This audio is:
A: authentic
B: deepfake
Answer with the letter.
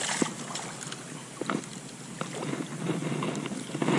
A